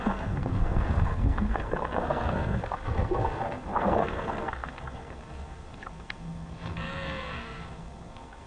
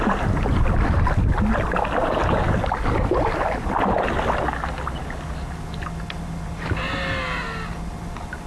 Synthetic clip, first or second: first